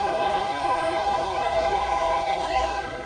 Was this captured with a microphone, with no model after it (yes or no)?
no